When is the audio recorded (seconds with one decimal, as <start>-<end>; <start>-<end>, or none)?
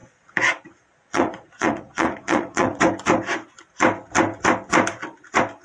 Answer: 2.8-5.6